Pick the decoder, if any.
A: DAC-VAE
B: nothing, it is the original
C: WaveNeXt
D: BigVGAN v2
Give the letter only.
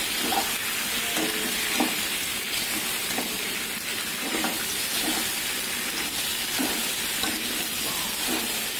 B